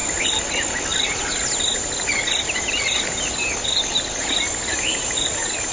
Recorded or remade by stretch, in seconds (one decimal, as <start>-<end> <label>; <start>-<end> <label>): 0.0-5.7 recorded